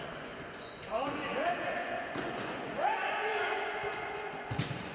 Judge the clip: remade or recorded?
remade